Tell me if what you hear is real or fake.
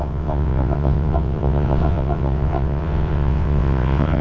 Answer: fake